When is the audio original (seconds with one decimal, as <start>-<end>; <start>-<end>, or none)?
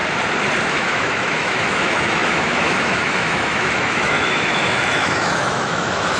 0.0-0.7